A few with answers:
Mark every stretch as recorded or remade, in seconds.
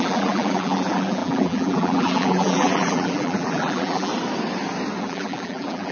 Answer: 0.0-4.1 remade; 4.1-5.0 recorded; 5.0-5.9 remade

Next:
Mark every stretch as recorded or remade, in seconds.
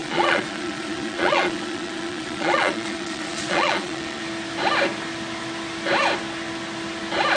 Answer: 0.0-4.2 remade; 4.2-7.4 recorded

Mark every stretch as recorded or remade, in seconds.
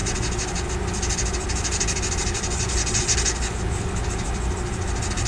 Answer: 0.0-5.3 recorded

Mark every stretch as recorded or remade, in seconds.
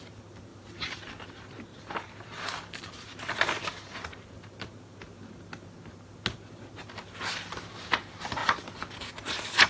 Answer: 0.0-0.5 recorded; 0.5-1.0 remade; 1.0-1.7 recorded; 1.7-3.6 remade; 3.6-8.4 recorded; 8.4-9.1 remade; 9.1-9.7 recorded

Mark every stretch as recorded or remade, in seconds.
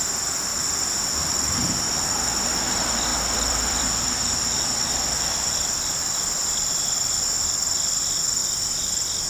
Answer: 0.0-0.5 recorded; 0.5-1.7 remade; 1.7-3.1 recorded; 3.1-5.7 remade; 5.7-8.4 recorded; 8.4-9.3 remade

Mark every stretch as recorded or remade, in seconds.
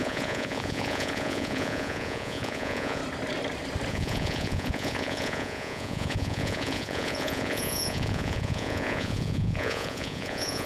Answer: 0.0-3.0 remade; 3.0-3.9 recorded; 3.9-10.7 remade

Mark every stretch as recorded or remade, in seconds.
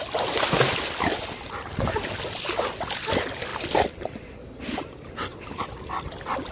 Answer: 0.0-6.5 recorded